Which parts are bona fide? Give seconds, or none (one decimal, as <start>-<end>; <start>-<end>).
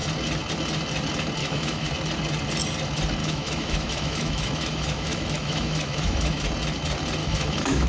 0.0-1.4; 1.9-3.2; 6.4-7.2